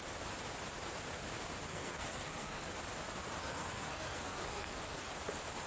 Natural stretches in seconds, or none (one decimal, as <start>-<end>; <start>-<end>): 0.0-1.7; 2.6-3.4; 5.1-5.7